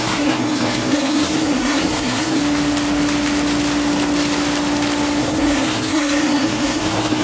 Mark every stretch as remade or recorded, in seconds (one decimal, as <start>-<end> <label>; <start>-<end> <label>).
0.0-2.4 remade; 2.4-5.2 recorded; 5.2-7.2 remade